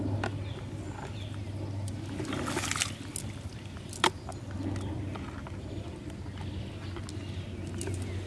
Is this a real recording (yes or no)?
yes